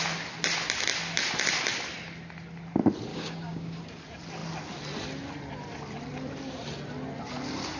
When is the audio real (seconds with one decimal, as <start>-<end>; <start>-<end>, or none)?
0.0-3.1; 3.8-7.8